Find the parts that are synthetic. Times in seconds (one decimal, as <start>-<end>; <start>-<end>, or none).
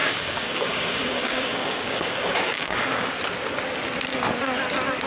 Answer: 0.0-3.1